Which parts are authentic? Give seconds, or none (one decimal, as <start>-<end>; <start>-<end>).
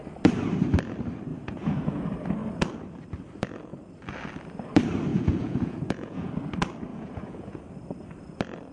0.0-1.3; 2.0-5.1; 6.3-6.9; 7.6-8.7